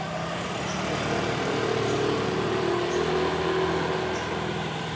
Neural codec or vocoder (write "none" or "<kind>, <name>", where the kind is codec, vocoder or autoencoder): none